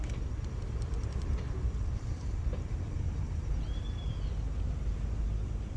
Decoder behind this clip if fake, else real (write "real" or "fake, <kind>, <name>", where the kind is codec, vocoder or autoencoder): real